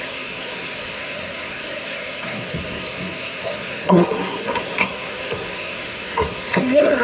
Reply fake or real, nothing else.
fake